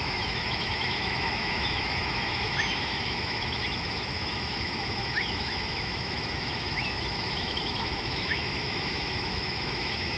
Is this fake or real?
fake